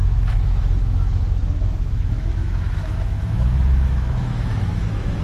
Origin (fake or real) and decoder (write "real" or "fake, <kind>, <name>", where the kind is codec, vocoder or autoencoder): fake, autoencoder, DAC-VAE